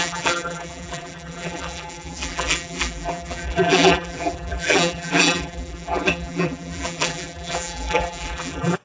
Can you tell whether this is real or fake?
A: fake